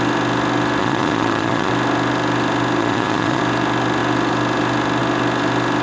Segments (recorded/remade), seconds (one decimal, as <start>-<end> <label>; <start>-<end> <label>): 0.0-0.8 recorded; 0.8-1.7 remade; 1.7-2.8 recorded; 2.8-3.4 remade; 3.4-5.8 recorded